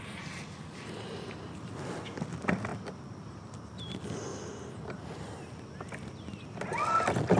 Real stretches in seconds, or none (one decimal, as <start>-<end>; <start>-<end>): 0.0-7.4

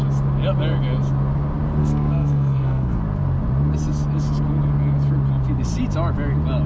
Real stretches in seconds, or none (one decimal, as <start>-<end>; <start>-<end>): 0.0-1.8; 3.0-6.7

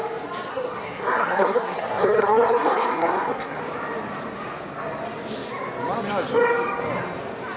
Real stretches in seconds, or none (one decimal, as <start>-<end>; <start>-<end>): 0.0-0.5; 3.6-7.6

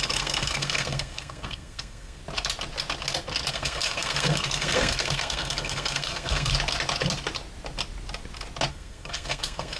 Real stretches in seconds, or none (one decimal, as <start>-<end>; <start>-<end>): 2.2-3.5; 6.5-8.7

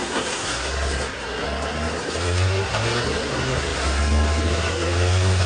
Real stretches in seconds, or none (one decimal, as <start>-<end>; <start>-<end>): none